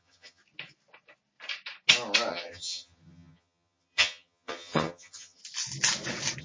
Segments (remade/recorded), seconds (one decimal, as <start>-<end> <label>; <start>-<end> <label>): 0.0-0.4 remade; 0.4-2.3 recorded; 2.3-5.4 remade; 5.4-6.4 recorded